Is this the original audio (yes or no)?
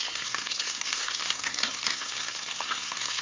no